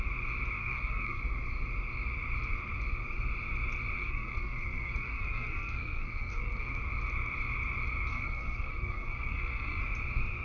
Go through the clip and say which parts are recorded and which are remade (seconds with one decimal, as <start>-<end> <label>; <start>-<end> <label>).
0.0-0.6 recorded; 0.6-1.2 remade; 1.2-4.0 recorded; 4.0-6.8 remade; 6.8-8.1 recorded; 8.1-9.8 remade; 9.8-10.4 recorded